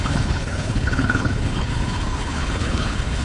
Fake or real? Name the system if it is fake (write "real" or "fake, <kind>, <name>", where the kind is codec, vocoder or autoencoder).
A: fake, codec, HILCodec